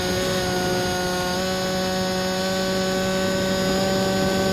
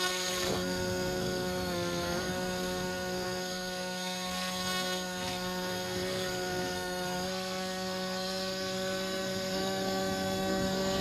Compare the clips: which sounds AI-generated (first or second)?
second